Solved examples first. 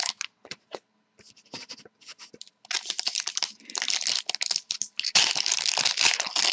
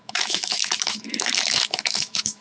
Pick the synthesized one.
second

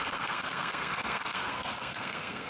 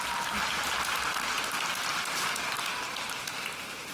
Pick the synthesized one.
first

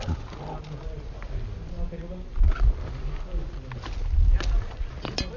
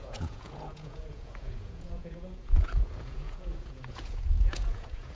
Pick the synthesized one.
second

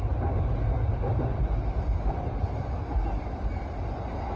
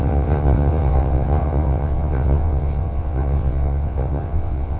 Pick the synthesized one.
second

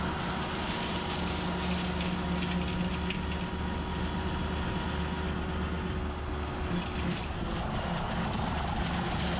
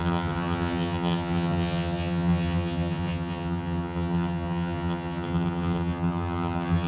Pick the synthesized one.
second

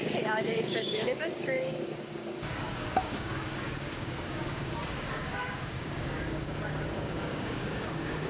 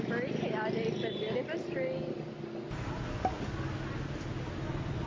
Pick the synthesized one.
first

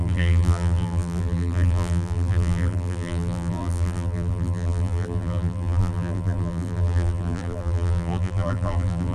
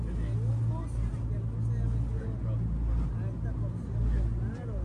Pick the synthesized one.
first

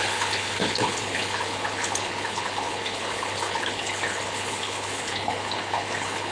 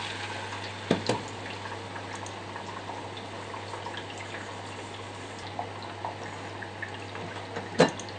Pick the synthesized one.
first